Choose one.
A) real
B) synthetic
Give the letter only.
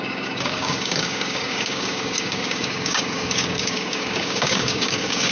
B